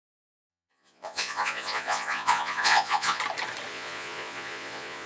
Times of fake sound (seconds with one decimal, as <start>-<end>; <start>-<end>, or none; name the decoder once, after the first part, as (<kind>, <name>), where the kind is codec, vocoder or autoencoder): 0.5-3.2 (vocoder, Vocos); 3.7-5.1